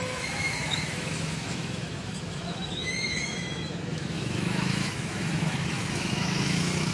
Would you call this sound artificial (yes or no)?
yes